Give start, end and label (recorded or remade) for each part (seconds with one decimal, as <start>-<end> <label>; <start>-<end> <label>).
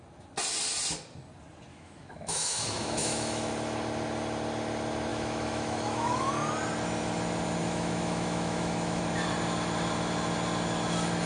0.0-1.7 recorded; 1.7-3.5 remade; 3.5-5.1 recorded; 5.1-6.3 remade; 6.3-7.6 recorded; 7.6-9.0 remade; 9.0-11.3 recorded